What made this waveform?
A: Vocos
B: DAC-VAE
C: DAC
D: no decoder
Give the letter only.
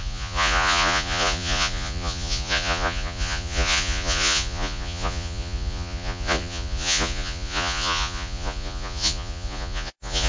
A